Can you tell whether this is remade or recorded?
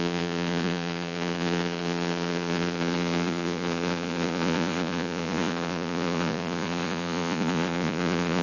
remade